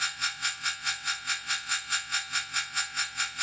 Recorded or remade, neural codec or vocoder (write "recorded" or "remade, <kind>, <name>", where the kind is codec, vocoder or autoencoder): remade, vocoder, WaveNeXt